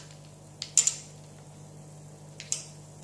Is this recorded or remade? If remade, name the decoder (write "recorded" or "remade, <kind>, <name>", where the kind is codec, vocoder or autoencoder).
recorded